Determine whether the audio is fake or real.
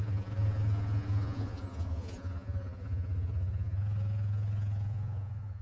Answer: fake